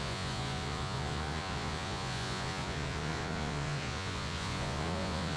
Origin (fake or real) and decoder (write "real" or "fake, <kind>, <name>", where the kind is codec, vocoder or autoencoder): fake, vocoder, Vocos